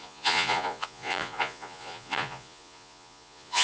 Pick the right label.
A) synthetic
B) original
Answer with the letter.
A